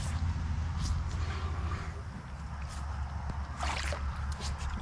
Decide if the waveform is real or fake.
real